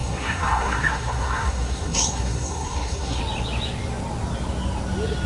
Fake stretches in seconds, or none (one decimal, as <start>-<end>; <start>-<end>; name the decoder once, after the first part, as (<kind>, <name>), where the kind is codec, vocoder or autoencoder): 0.0-3.2 (codec, SNAC)